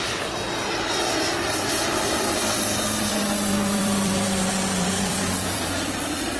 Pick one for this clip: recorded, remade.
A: remade